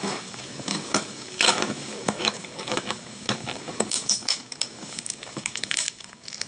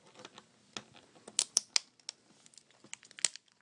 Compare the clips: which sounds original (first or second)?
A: second